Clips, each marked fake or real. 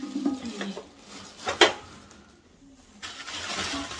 real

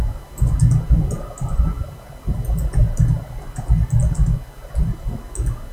real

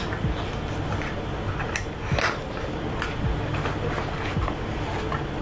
real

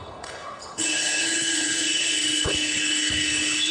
fake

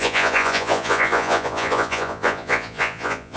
fake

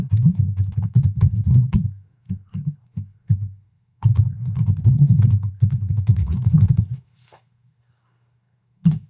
fake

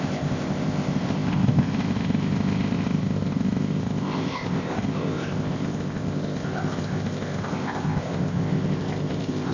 fake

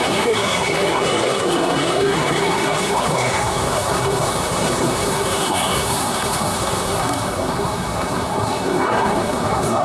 fake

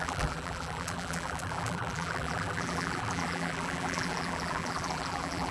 fake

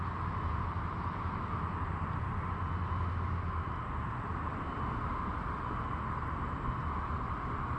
real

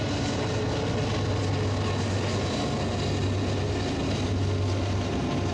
real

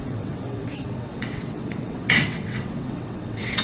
fake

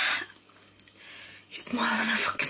real